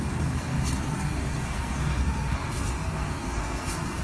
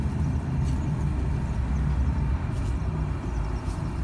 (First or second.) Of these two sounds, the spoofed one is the first